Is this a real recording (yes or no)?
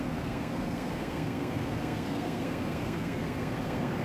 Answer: no